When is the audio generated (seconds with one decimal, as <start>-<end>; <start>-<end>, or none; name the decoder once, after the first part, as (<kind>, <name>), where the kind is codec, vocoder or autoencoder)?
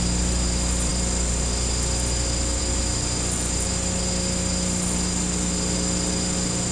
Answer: none